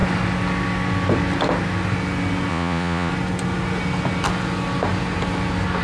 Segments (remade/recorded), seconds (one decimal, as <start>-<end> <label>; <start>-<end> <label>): 0.0-2.5 recorded; 2.5-3.1 remade; 3.1-5.8 recorded